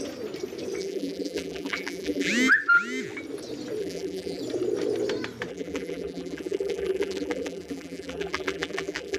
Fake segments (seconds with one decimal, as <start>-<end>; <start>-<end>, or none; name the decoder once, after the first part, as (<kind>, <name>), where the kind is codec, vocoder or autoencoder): 0.8-2.3 (vocoder, BigVGAN v2); 3.8-4.4; 5.5-9.2